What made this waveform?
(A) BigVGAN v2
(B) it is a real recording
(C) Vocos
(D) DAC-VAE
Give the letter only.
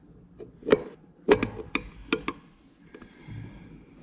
B